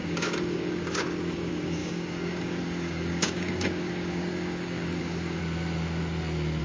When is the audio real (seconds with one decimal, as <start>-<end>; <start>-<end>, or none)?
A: 5.4-6.6

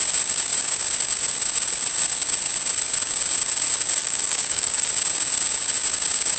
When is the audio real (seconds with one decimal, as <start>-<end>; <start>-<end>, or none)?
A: 0.0-4.0; 4.9-6.4

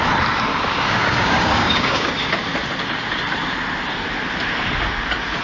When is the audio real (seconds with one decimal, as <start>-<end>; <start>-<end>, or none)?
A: 0.0-0.5; 2.1-5.4

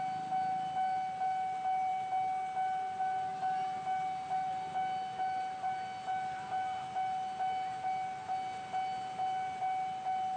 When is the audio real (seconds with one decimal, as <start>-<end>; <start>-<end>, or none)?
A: 0.0-10.4

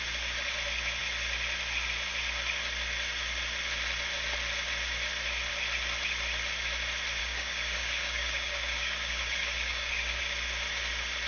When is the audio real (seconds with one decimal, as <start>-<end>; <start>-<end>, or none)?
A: 0.0-7.2; 10.2-11.3

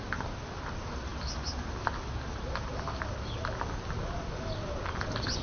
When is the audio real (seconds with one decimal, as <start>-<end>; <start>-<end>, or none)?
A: 0.0-5.4